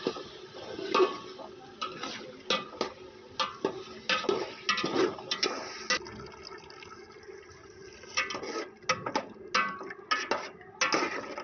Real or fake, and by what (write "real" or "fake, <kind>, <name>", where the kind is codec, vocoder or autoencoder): real